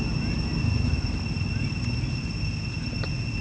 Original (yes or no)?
yes